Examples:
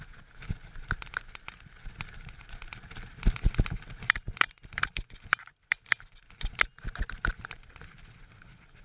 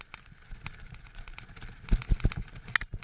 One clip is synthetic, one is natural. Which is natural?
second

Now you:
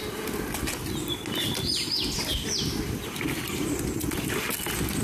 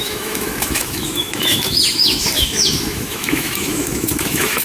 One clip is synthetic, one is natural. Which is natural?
first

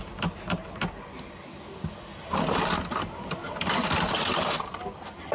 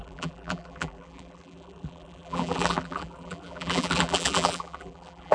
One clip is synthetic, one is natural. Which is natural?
first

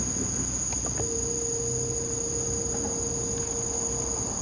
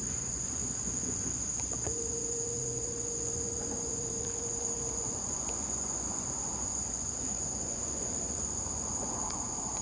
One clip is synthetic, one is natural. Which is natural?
first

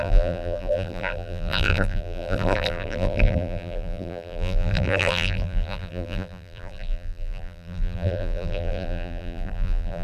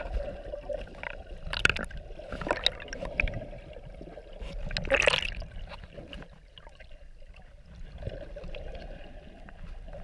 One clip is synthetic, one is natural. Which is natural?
second